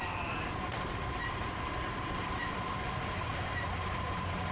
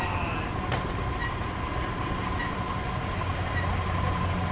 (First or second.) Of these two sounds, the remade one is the first